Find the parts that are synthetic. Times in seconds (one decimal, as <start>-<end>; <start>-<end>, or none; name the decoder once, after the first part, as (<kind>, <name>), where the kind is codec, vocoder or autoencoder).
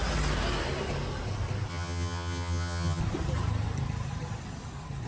1.7-3.0 (vocoder, HiFi-GAN)